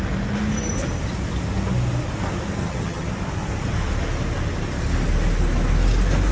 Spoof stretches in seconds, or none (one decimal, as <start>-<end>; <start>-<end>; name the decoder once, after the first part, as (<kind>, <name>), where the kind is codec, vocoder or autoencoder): 2.6-3.1 (vocoder, HiFi-GAN)